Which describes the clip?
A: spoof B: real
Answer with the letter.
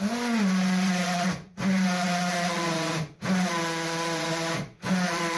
A